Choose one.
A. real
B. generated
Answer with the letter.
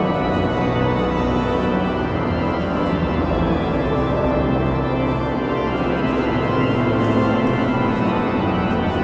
A